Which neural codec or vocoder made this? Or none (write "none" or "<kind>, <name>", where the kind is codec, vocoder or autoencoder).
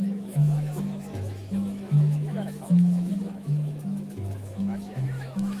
autoencoder, DAC-VAE